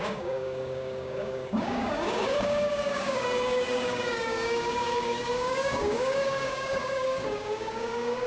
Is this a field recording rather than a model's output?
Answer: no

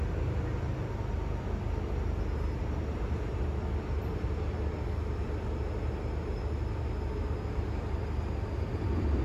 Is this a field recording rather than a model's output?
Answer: yes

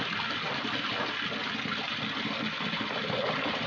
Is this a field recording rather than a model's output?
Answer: yes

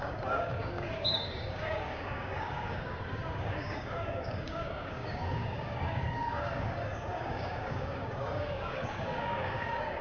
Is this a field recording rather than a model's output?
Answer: no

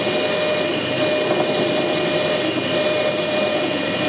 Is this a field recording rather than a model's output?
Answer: yes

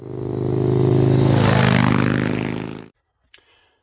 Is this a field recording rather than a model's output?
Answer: yes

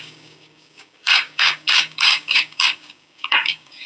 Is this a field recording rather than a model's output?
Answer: no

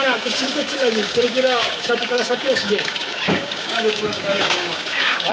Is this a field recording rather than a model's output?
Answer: no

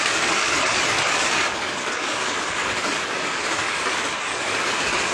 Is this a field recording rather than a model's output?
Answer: no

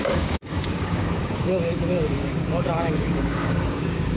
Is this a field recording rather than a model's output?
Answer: no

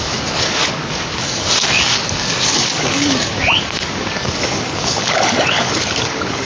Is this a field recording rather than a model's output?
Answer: no